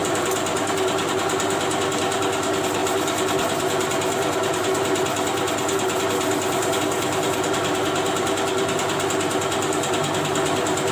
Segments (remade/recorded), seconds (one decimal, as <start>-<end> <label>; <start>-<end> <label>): 0.0-10.9 recorded